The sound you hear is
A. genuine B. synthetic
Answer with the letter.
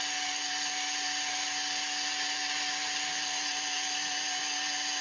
A